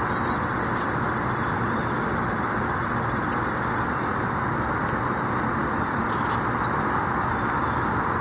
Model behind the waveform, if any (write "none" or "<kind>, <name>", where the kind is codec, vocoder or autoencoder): none